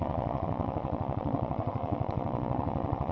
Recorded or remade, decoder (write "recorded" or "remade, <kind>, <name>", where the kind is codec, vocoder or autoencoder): remade, vocoder, Vocos